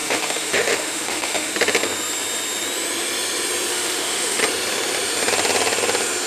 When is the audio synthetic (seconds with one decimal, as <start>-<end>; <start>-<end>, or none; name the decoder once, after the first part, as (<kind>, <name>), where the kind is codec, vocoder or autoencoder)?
0.0-1.5 (autoencoder, DAC-VAE); 3.7-4.4